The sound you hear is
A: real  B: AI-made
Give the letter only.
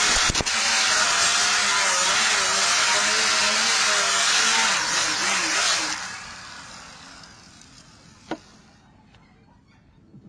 A